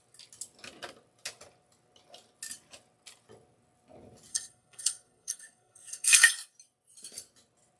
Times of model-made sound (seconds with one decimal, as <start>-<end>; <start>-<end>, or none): 4.3-6.3